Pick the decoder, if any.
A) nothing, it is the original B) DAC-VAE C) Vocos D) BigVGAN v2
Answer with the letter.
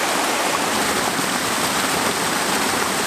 A